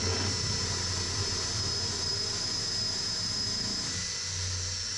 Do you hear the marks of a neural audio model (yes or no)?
no